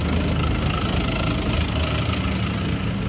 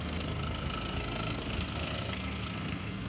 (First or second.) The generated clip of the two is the second